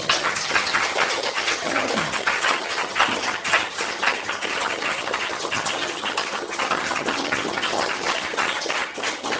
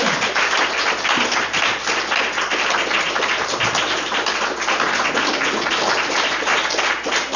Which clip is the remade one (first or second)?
first